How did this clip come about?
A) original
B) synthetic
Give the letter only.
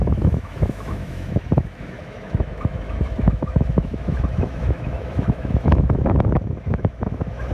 B